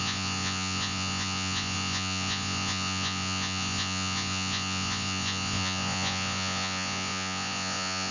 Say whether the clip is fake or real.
fake